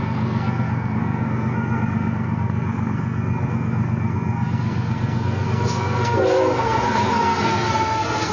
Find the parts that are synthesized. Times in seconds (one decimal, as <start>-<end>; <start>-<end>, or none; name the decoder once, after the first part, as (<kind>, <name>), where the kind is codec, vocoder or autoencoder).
0.0-8.3 (codec, SNAC)